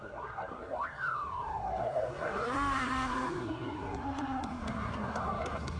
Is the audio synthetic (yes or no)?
yes